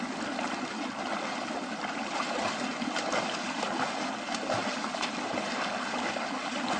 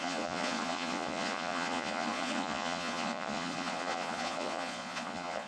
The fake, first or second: second